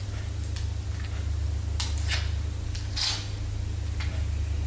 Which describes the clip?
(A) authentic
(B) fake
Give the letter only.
A